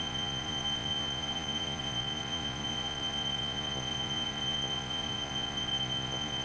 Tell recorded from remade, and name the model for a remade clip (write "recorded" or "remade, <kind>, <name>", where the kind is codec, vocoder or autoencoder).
remade, vocoder, Vocos